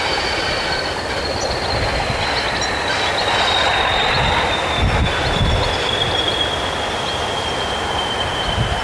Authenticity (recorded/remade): recorded